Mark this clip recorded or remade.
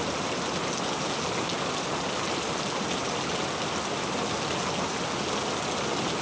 recorded